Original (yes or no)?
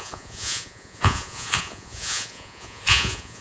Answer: no